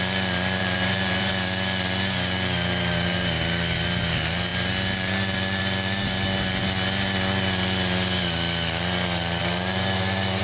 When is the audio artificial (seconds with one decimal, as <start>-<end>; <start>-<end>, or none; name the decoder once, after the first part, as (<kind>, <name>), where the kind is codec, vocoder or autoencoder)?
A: 0.6-1.3 (vocoder, BigVGAN v2); 9.4-10.4